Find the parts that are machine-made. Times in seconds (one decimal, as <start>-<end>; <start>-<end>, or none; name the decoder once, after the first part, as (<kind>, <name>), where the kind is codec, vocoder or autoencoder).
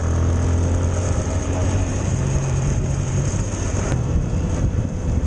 1.0-5.3 (vocoder, BigVGAN v2)